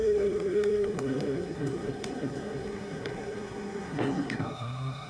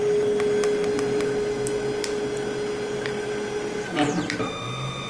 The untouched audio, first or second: second